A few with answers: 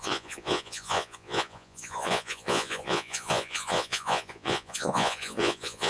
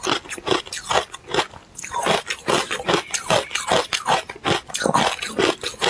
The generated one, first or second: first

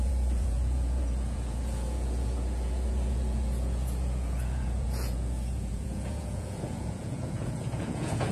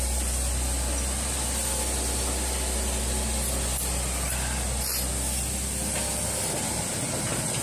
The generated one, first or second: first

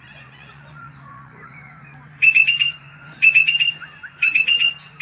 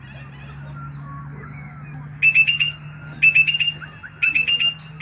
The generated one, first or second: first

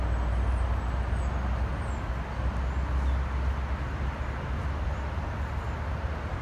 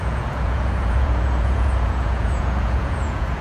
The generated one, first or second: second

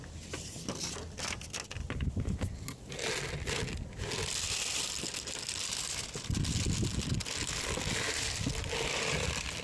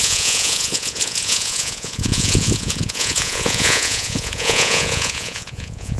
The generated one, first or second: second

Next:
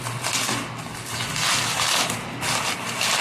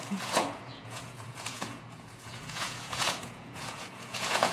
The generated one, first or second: second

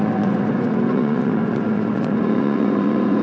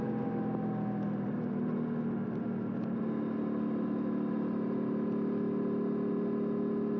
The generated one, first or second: first